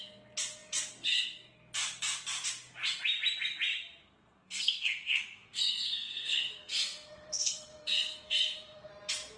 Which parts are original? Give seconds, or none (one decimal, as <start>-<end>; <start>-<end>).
0.0-4.0; 8.9-9.4